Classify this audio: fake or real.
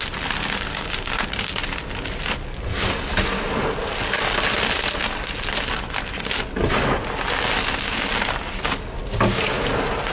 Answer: real